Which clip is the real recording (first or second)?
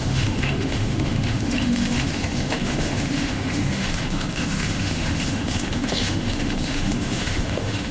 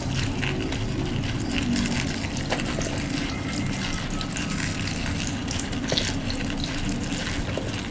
second